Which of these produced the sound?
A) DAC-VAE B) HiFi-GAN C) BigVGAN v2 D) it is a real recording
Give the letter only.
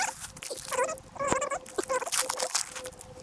D